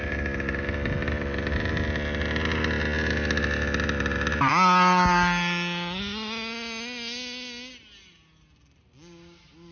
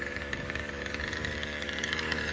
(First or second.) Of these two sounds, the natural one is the first